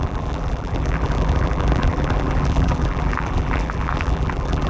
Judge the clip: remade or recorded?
remade